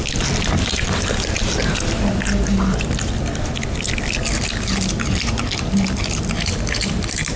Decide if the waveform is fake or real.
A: real